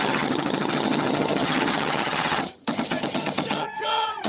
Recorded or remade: remade